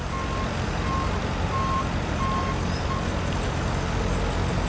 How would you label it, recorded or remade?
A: recorded